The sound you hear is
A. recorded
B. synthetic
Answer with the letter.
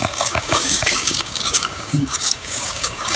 B